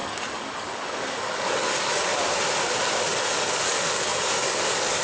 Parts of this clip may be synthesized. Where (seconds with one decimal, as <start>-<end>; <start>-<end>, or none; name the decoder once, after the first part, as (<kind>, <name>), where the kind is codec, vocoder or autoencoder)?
0.0-2.1 (codec, DAC); 2.9-5.0